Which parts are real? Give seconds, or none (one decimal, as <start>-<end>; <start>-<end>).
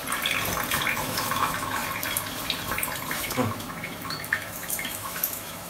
0.0-0.9; 1.8-3.2